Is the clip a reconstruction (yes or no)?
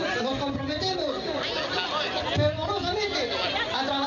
no